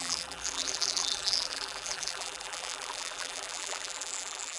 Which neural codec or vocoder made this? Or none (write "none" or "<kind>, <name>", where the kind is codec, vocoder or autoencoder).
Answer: vocoder, BigVGAN v2